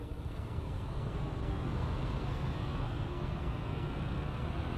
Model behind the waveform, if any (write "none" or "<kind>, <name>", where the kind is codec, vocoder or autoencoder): codec, SNAC